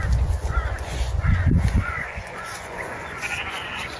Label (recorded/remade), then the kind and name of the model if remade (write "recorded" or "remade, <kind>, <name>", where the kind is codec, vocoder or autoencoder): remade, vocoder, Vocos